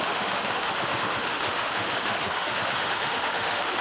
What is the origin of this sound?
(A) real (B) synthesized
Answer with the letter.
B